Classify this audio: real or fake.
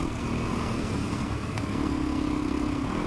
fake